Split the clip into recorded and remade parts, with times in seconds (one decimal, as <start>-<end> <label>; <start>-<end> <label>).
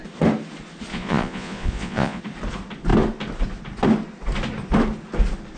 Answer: 0.0-0.9 recorded; 0.9-2.2 remade; 2.2-5.6 recorded